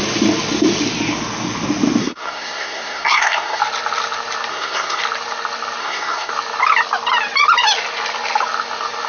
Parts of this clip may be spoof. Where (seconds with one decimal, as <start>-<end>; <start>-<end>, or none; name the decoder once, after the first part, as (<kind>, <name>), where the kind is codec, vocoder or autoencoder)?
2.0-3.6 (codec, SNAC); 4.5-5.0; 5.8-6.3